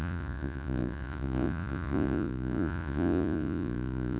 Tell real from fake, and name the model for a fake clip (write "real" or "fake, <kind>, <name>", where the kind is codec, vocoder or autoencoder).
fake, vocoder, Vocos